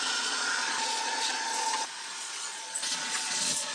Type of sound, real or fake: fake